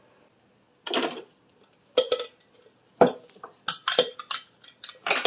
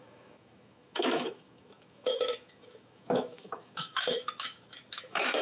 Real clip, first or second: first